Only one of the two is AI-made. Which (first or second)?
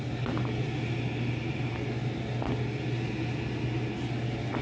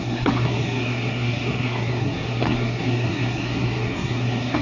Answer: second